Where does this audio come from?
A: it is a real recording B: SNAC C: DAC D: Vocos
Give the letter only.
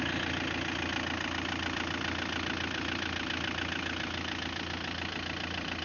A